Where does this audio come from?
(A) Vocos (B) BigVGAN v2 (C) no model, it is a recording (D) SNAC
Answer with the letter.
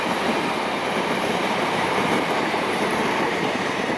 B